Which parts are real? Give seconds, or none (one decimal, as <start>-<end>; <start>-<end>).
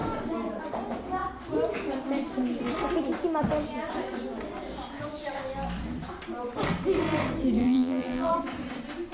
0.0-7.6; 8.3-9.1